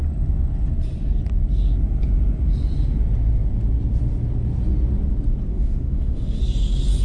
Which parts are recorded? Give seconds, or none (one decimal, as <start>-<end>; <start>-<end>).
0.0-5.5; 6.4-7.0